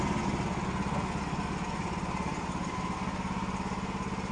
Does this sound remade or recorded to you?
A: recorded